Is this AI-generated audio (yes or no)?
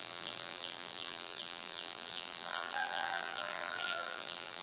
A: yes